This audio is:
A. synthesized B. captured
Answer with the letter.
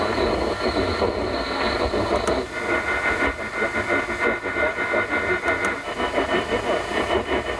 B